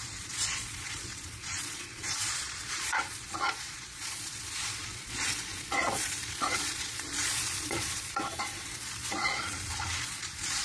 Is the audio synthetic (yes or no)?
yes